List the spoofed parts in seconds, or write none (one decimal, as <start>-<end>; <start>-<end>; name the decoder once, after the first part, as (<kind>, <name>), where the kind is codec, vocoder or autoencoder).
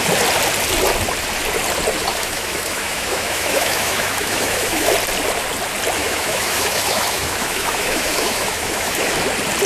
2.1-4.9 (autoencoder, DAC-VAE); 6.0-9.1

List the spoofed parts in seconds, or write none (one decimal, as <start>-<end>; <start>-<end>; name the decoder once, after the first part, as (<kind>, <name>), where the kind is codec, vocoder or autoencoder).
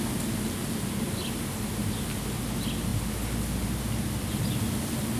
none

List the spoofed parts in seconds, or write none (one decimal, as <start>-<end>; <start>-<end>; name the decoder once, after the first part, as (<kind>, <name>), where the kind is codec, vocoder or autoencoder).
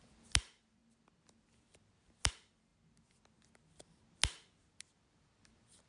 0.0-0.8 (vocoder, BigVGAN v2); 2.3-2.7; 4.7-5.9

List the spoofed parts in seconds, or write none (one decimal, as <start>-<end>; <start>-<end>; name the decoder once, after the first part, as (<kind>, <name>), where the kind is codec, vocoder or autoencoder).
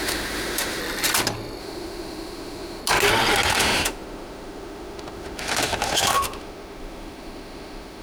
0.0-0.8 (autoencoder, DAC-VAE); 1.6-2.8; 3.5-8.0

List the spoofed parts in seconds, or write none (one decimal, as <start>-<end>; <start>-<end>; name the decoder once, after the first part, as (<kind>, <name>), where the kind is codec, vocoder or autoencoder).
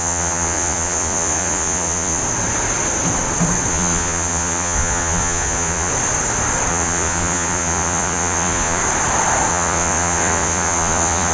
0.0-2.2 (vocoder, Vocos); 3.7-5.9; 6.7-8.8; 9.5-11.3